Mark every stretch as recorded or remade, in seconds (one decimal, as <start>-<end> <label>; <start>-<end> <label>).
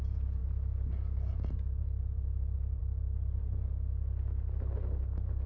0.0-5.5 recorded